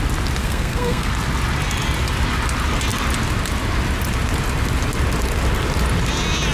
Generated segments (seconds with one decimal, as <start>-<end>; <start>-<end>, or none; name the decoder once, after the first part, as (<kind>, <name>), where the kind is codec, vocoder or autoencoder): 0.4-1.1 (codec, SNAC)